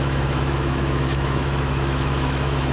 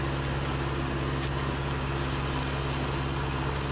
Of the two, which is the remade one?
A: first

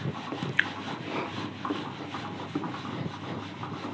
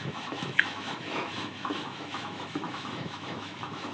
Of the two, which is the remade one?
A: second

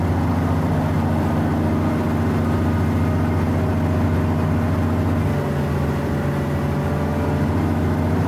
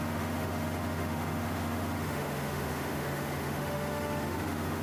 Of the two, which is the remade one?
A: second